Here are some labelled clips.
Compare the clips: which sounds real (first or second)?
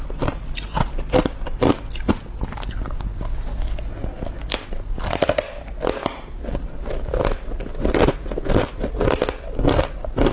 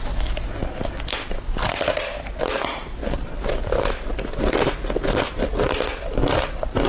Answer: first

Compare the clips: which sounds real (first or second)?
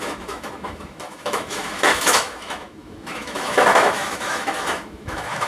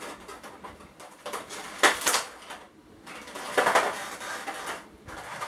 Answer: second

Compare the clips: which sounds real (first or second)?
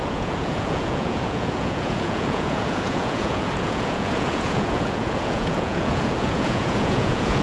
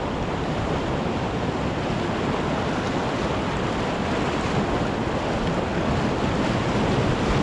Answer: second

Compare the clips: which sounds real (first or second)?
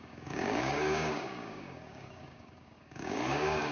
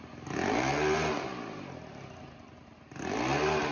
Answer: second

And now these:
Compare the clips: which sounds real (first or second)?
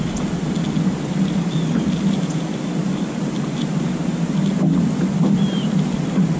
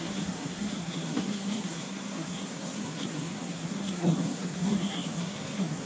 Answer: first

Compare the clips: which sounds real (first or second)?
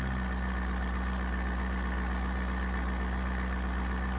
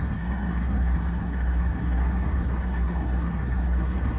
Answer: first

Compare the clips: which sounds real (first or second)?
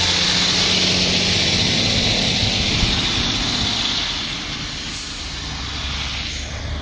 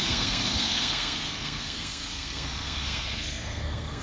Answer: first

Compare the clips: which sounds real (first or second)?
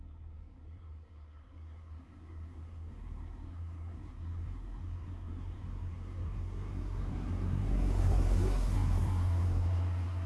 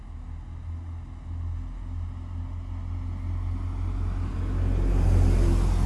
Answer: second